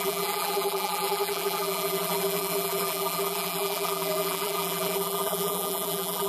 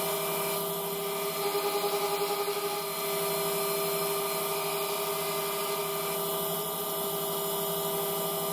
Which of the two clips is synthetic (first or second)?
first